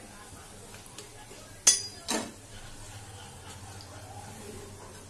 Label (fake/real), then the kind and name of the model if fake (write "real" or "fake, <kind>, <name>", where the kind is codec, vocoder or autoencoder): real